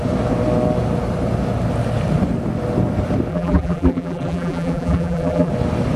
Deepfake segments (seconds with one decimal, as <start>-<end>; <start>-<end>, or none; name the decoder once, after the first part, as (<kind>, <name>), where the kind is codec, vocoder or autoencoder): 3.3-5.5 (vocoder, BigVGAN v2)